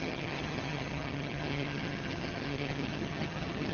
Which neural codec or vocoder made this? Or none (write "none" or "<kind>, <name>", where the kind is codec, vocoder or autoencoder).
vocoder, HiFi-GAN